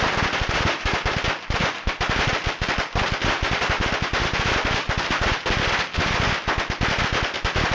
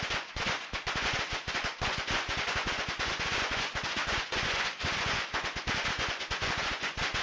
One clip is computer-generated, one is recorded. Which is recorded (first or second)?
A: first